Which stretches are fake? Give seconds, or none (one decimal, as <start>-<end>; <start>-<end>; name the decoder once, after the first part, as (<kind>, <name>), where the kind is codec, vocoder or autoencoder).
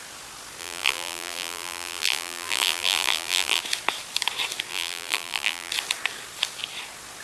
0.6-3.6 (vocoder, BigVGAN v2); 4.7-5.7